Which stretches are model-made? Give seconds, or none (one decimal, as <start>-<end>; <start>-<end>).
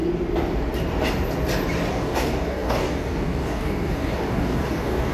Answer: 1.9-5.1